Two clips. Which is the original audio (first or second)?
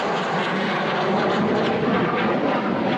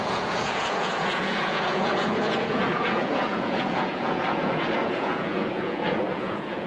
first